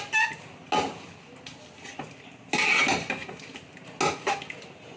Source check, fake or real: real